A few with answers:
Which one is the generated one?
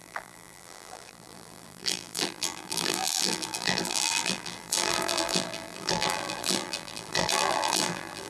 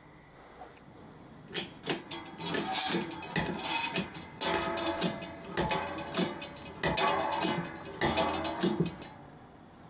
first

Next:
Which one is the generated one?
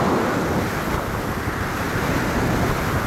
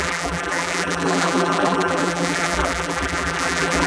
second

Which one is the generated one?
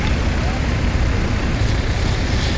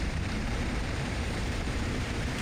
second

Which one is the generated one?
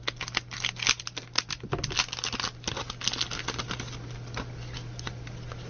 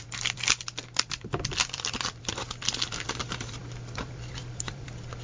second